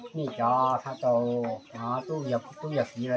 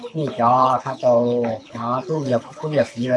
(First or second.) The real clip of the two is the first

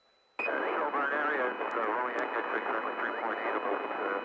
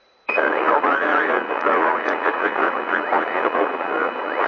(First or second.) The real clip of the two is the first